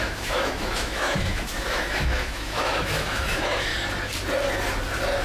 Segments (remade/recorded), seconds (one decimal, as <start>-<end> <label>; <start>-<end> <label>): 0.0-3.7 remade; 3.7-5.2 recorded